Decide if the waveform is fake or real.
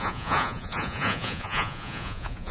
fake